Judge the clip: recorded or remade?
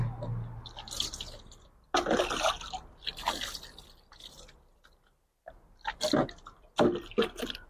recorded